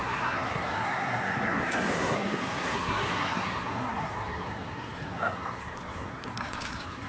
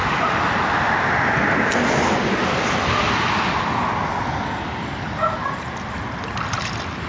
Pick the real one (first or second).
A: second